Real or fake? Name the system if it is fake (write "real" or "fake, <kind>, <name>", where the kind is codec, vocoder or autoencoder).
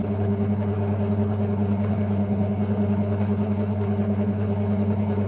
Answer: fake, codec, HILCodec